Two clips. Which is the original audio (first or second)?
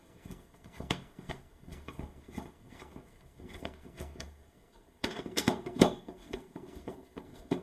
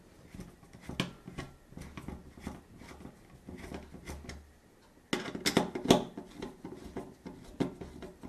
second